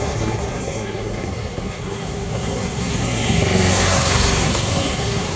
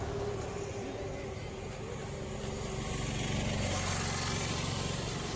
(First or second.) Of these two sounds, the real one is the second